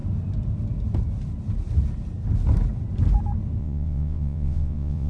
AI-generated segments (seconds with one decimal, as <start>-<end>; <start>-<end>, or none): 3.6-5.1